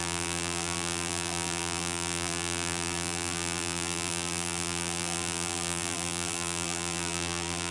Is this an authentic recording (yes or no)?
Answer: no